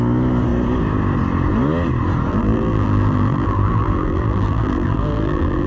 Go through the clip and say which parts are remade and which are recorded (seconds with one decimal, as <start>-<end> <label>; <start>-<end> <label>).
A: 0.0-2.3 recorded; 2.3-5.7 remade